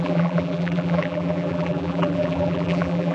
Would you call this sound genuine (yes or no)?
no